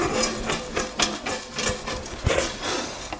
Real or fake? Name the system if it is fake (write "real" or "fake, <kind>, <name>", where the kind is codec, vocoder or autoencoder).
real